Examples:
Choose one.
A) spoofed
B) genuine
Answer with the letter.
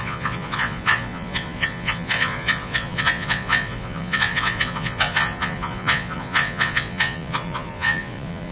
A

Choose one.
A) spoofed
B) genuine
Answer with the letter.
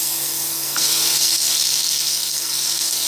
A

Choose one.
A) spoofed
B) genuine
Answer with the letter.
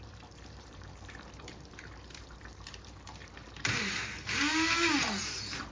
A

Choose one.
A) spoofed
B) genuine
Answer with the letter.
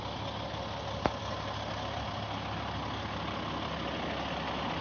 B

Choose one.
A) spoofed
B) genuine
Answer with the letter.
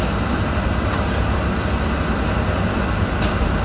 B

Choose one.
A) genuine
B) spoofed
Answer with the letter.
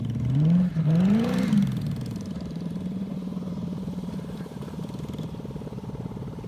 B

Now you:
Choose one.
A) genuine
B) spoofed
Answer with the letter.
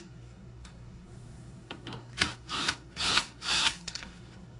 B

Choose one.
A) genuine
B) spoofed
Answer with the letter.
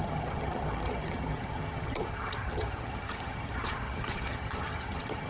B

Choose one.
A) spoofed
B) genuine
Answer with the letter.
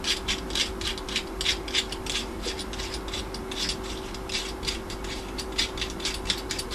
B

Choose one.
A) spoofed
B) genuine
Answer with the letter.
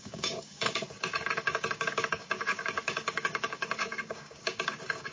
A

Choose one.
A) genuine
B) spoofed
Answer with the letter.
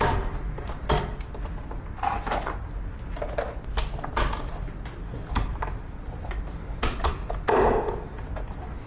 A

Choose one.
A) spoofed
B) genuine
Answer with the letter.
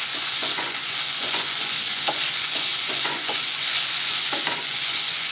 A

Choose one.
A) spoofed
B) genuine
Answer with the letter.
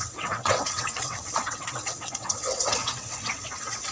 A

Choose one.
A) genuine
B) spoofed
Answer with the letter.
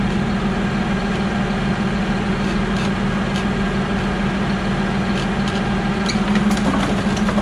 A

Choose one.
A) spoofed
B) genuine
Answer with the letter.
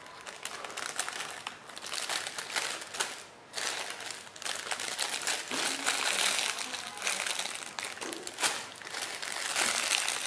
B